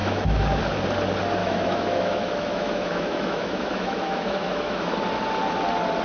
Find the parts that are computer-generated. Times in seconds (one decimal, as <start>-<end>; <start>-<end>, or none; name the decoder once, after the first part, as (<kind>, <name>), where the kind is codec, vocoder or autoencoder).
0.0-0.6 (autoencoder, DAC-VAE); 1.4-5.0